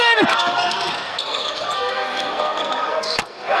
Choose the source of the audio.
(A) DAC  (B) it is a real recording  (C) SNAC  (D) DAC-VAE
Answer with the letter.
C